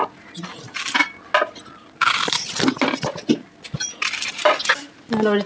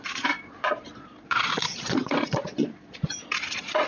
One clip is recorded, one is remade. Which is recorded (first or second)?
first